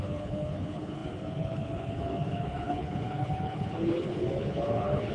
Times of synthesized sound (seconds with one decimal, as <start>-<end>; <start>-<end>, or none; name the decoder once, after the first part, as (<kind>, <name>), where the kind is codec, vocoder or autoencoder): 0.0-5.1 (codec, HILCodec)